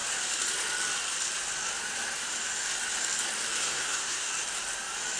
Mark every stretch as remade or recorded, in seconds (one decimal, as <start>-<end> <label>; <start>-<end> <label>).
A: 0.0-3.6 recorded; 3.6-4.3 remade; 4.3-5.2 recorded